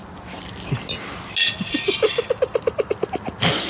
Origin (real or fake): real